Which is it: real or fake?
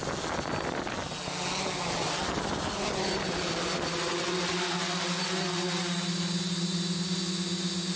real